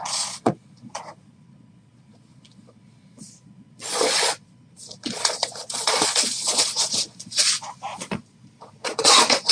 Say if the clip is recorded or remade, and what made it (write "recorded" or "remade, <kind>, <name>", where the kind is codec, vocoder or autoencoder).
remade, vocoder, Vocos